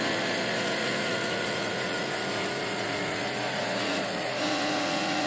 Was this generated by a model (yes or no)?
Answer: yes